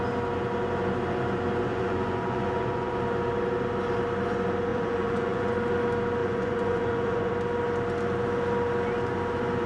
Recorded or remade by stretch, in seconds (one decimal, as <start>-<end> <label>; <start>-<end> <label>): 0.0-1.7 recorded; 1.7-3.0 remade; 3.0-4.7 recorded; 4.7-5.5 remade; 5.5-6.2 recorded; 6.2-7.3 remade; 7.3-9.7 recorded